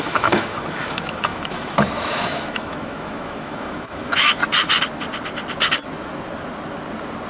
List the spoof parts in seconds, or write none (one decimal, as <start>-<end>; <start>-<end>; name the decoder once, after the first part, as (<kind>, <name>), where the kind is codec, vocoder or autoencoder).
0.0-4.4 (autoencoder, DAC-VAE)